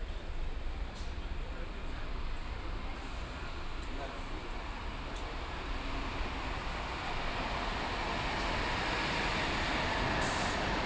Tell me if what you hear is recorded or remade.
recorded